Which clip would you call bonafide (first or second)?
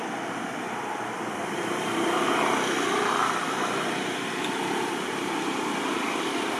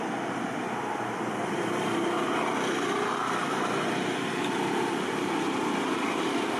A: second